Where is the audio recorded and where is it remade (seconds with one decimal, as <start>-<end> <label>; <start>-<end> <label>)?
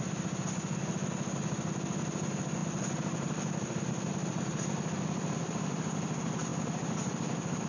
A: 0.0-7.7 recorded